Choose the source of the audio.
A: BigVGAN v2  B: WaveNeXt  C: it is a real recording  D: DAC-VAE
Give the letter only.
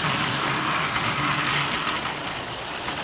A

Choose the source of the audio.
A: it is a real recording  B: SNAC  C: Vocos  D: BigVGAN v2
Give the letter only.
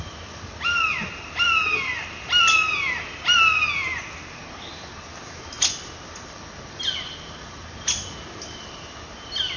A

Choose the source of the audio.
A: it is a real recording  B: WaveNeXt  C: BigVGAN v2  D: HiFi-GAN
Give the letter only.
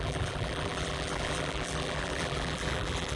C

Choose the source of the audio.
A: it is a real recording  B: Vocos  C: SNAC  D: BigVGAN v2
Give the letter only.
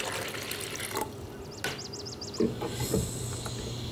A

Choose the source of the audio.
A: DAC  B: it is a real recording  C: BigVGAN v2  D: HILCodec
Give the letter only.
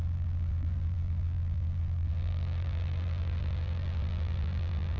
C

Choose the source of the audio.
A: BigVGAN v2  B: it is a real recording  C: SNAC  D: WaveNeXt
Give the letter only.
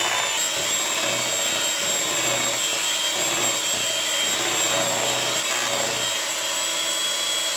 B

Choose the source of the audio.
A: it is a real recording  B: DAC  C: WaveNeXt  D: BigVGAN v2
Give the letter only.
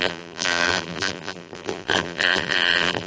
D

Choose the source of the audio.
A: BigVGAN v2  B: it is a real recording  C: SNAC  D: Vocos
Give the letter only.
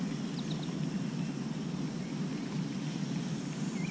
B